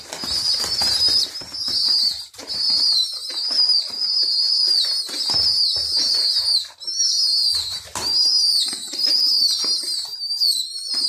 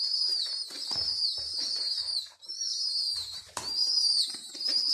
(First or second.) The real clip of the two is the first